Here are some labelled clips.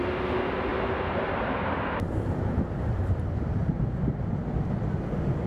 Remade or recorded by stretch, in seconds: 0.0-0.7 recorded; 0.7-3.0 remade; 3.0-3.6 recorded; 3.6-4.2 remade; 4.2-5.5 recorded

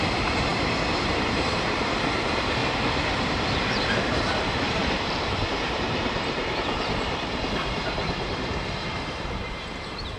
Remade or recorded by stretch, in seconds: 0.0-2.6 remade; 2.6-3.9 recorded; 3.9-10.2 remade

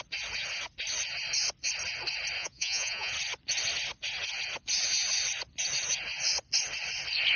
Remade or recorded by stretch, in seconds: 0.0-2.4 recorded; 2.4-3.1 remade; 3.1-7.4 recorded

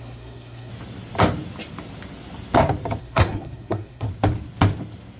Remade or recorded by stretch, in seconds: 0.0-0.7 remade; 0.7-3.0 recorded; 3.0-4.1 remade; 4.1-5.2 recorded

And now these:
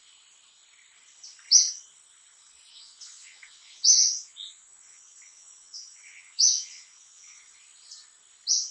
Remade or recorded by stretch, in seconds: 0.0-2.7 recorded; 2.7-7.4 remade; 7.4-8.7 recorded

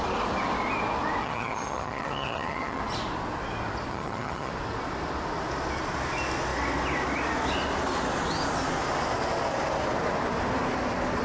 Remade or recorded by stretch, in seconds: 0.0-1.2 recorded; 1.2-2.8 remade; 2.8-3.9 recorded; 3.9-4.5 remade; 4.5-11.2 recorded

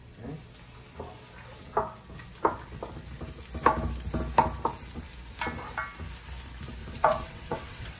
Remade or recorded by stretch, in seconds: 0.0-6.8 recorded; 6.8-8.0 remade